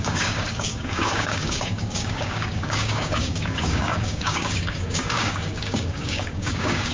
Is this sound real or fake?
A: fake